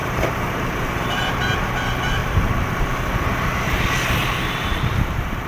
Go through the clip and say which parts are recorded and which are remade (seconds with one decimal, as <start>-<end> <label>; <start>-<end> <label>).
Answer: 0.0-1.3 remade; 1.3-2.2 recorded; 2.2-2.9 remade; 2.9-4.2 recorded; 4.2-5.5 remade